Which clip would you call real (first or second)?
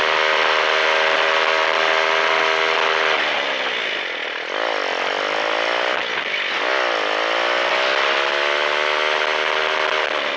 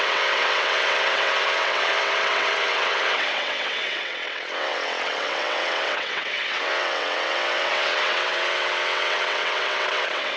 first